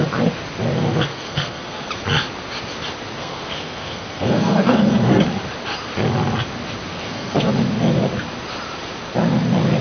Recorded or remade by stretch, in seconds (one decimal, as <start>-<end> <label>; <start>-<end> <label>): 0.0-1.1 recorded; 1.1-1.9 remade; 1.9-3.2 recorded; 3.2-5.2 remade; 5.2-6.9 recorded; 6.9-7.5 remade; 7.5-9.8 recorded